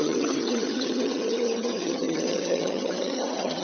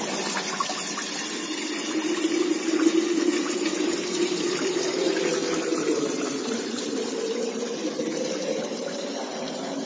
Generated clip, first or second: first